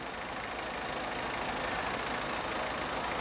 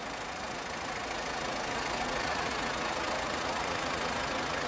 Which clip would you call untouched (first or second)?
first